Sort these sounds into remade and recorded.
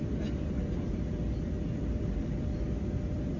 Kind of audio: remade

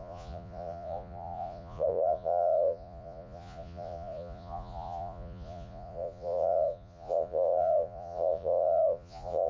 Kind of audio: remade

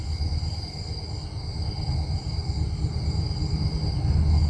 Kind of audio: recorded